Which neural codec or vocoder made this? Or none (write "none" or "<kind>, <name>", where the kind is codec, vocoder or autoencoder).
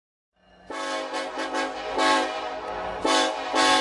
none